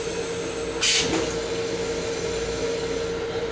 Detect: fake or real real